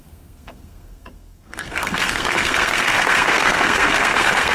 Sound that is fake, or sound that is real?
fake